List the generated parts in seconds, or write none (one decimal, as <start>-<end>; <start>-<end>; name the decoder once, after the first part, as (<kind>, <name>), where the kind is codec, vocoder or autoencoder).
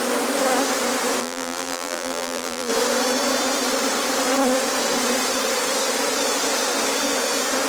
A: 1.2-2.7 (vocoder, BigVGAN v2)